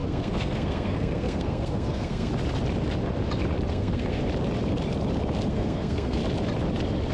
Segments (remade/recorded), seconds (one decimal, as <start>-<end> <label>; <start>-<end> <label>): 0.0-2.3 remade; 2.3-3.7 recorded; 3.7-4.2 remade; 4.2-5.5 recorded; 5.5-6.2 remade; 6.2-7.1 recorded